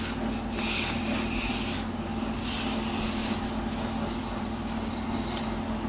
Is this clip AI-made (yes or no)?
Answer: no